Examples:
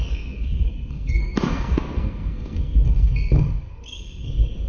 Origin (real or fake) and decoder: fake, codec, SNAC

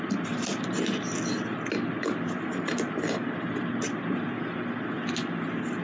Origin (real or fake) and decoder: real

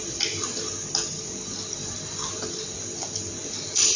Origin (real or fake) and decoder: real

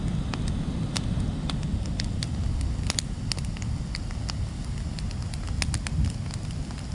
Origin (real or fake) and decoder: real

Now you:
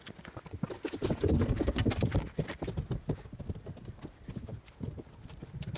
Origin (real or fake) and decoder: real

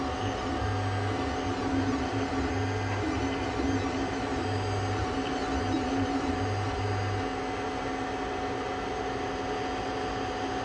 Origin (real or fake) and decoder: real